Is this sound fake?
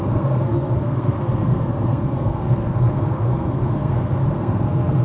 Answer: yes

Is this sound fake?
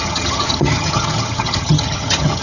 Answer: yes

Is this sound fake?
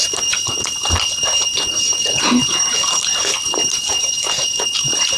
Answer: no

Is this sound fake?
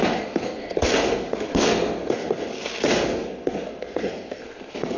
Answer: yes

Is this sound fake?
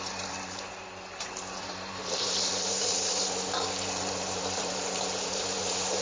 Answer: yes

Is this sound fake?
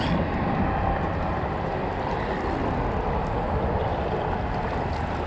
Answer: no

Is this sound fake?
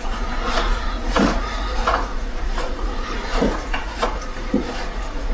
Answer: yes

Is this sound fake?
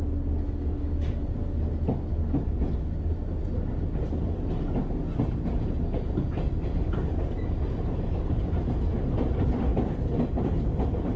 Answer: no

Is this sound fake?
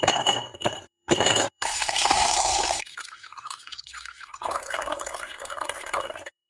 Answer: yes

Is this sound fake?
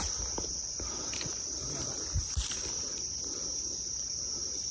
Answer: no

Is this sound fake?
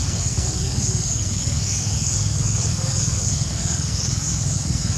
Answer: yes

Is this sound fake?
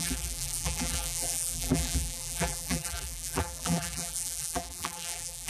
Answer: yes